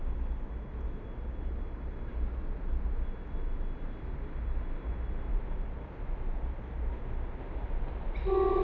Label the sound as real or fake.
real